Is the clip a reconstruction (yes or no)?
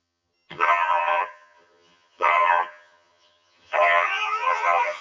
yes